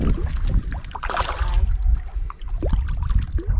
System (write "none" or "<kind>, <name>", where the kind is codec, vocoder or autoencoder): none